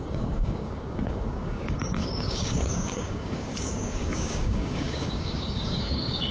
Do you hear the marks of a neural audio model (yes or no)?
yes